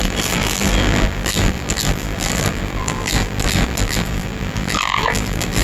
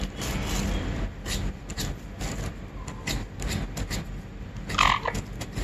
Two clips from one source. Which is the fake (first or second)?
first